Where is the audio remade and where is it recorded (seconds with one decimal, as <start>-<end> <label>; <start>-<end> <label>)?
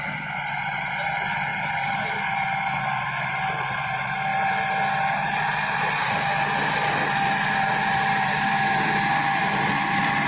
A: 0.0-1.5 recorded; 1.5-2.8 remade; 2.8-10.3 recorded